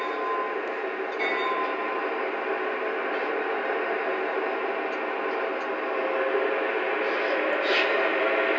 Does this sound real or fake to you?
real